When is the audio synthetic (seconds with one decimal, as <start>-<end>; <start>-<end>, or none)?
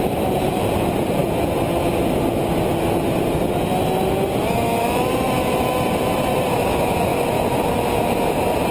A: 0.0-1.2; 4.8-7.1